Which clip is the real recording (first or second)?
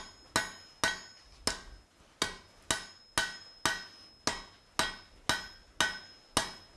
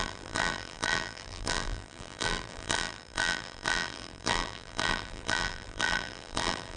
first